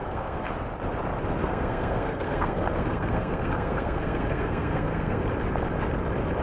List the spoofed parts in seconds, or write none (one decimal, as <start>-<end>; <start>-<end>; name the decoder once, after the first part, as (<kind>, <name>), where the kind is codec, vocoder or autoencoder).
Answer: 0.0-0.5 (codec, SNAC); 1.4-5.2